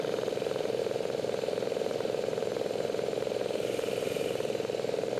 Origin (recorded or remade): remade